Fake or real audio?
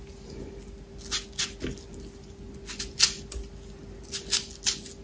real